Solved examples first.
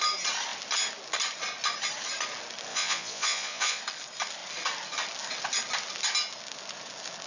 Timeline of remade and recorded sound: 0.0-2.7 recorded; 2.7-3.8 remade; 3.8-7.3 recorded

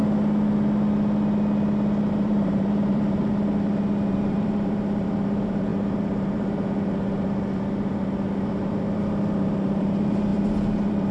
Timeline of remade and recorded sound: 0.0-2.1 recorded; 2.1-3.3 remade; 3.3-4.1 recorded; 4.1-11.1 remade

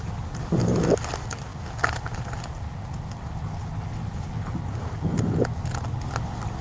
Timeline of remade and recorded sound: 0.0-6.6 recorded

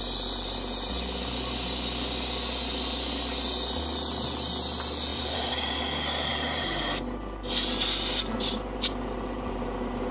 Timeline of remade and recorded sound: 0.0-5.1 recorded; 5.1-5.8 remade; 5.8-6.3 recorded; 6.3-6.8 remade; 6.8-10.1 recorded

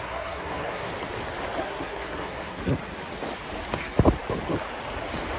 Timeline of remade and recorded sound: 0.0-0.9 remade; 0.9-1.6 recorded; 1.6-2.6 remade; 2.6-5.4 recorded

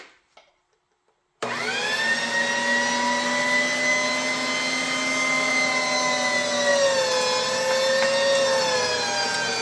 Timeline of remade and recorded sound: 0.0-9.6 recorded